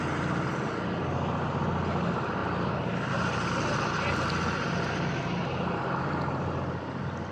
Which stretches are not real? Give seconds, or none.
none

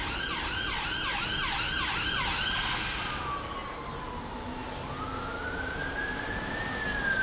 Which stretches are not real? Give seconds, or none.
0.0-0.9 (vocoder, BigVGAN v2)

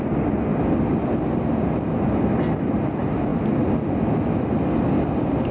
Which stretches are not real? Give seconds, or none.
none